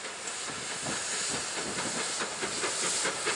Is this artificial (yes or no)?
no